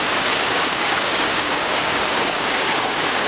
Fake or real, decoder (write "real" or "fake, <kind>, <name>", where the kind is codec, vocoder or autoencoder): fake, codec, DAC